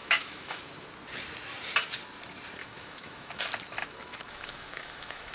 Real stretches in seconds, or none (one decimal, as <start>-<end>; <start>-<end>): 0.6-2.6; 3.4-3.8